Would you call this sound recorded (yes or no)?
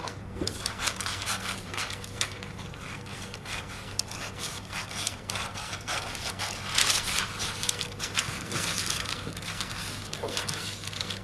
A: no